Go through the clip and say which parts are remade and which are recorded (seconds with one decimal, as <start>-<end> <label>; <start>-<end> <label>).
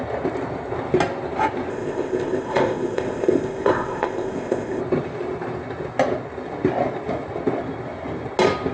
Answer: 0.0-1.7 recorded; 1.7-4.8 remade; 4.8-8.7 recorded